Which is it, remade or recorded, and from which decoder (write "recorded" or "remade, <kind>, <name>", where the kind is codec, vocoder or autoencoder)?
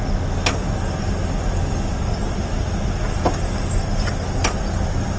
recorded